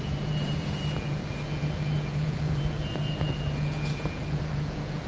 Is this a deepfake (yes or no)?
yes